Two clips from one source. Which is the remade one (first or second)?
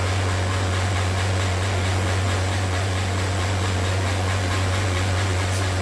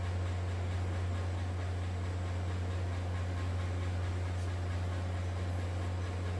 first